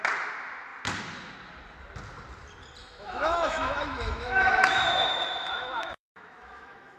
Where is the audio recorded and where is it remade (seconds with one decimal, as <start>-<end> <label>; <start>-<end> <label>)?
0.0-2.8 recorded; 2.8-7.0 remade